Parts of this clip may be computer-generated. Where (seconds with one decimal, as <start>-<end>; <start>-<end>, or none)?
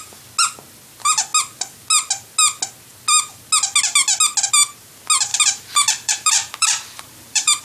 5.3-7.6